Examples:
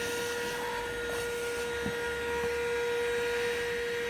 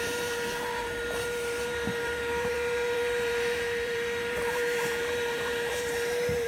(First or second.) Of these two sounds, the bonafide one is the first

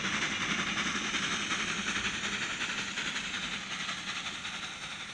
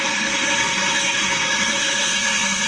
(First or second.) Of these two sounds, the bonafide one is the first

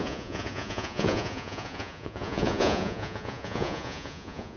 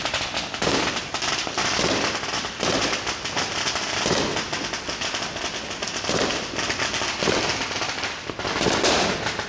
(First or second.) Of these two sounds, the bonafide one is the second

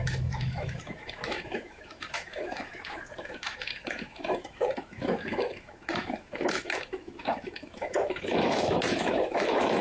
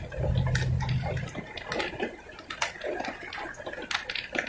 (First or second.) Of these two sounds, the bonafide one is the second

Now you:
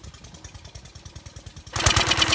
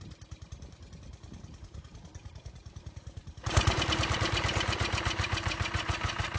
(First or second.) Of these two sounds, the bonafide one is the first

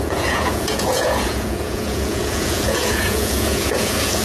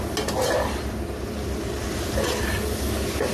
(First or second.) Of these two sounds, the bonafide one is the second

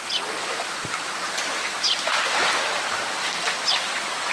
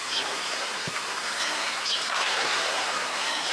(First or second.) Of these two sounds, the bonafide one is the first